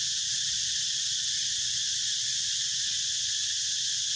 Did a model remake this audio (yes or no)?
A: no